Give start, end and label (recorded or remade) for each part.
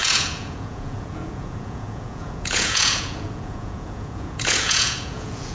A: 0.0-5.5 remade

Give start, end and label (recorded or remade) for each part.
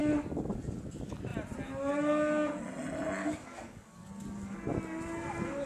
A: 0.0-3.2 recorded; 3.2-4.1 remade; 4.1-5.7 recorded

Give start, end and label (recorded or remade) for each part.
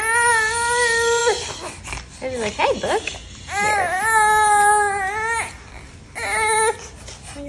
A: 0.0-7.5 recorded